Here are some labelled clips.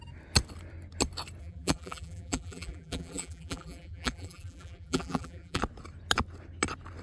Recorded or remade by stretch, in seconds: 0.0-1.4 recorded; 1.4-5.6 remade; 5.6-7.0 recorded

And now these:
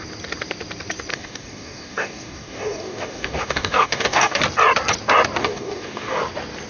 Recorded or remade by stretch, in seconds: 0.0-1.1 recorded; 1.1-4.4 remade; 4.4-5.4 recorded; 5.4-6.2 remade; 6.2-6.7 recorded

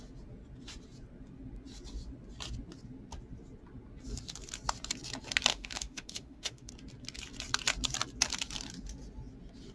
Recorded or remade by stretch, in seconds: 0.0-5.5 recorded; 5.5-6.7 remade; 6.7-9.7 recorded

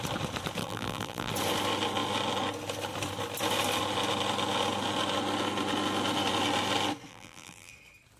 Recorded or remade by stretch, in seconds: 0.0-0.6 recorded; 0.6-1.3 remade; 1.3-7.1 recorded; 7.1-7.7 remade; 7.7-8.2 recorded

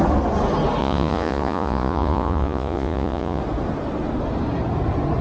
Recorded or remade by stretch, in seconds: 0.0-0.8 recorded; 0.8-3.4 remade; 3.4-5.2 recorded

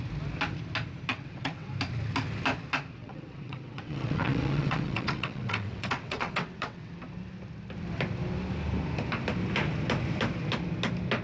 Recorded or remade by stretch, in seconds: 0.0-1.1 recorded; 1.1-1.7 remade; 1.7-3.0 recorded; 3.0-6.9 remade; 6.9-11.2 recorded

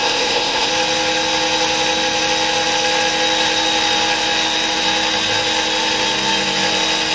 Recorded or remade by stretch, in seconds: 0.0-0.7 remade; 0.7-7.1 recorded

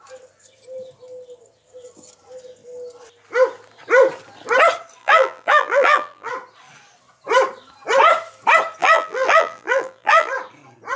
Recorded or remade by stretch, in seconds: 0.0-5.0 recorded; 5.0-6.3 remade; 6.3-8.8 recorded; 8.8-10.3 remade; 10.3-11.0 recorded